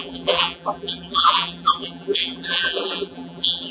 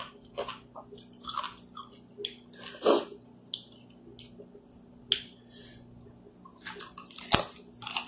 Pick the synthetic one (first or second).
first